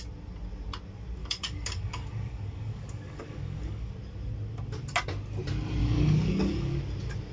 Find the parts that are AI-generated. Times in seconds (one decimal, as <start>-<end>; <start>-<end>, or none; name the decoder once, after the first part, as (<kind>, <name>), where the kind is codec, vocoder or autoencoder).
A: 1.2-3.9 (codec, DAC); 5.8-6.8